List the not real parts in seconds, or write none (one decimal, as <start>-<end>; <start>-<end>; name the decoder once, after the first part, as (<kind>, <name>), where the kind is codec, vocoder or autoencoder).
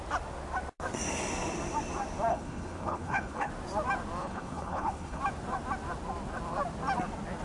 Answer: 2.3-3.5 (codec, HILCodec); 4.2-5.2